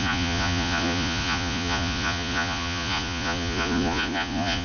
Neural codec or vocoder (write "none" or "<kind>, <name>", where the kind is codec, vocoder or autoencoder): vocoder, Vocos